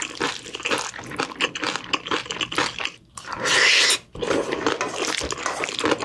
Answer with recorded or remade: recorded